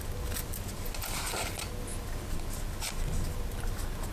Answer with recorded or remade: recorded